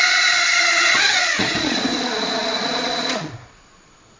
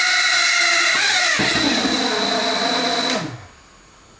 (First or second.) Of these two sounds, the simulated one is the first